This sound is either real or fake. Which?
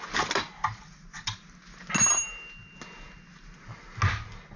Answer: real